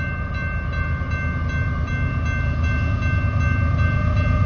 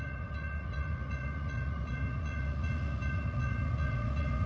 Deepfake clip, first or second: second